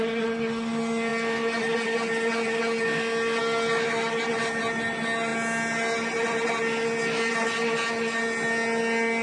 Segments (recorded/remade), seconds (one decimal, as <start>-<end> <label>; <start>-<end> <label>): 0.0-9.2 recorded